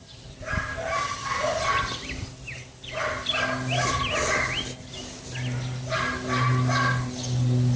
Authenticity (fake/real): real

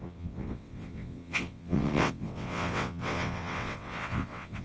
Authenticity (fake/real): fake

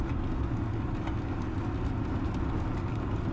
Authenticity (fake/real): real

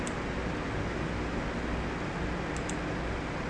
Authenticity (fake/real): real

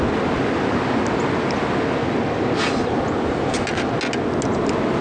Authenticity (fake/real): real